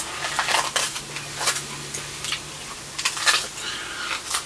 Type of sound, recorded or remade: recorded